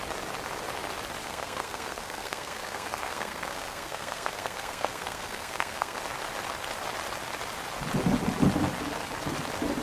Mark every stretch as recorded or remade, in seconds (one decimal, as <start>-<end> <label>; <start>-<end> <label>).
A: 0.0-1.2 recorded; 1.2-6.0 remade; 6.0-9.8 recorded